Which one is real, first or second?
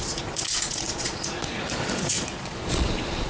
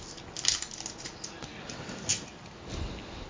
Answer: second